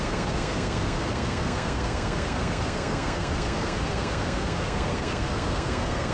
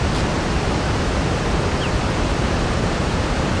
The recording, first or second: second